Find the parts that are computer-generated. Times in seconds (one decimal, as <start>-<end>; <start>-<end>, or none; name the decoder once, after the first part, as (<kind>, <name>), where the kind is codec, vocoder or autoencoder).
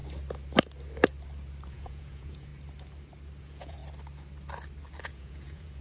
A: 1.7-2.5 (vocoder, Vocos); 3.4-3.8; 5.0-5.8